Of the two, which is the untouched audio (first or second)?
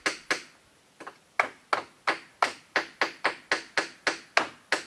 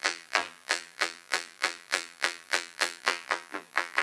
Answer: first